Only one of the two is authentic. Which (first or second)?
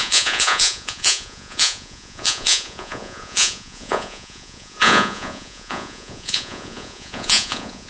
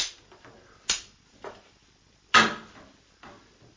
second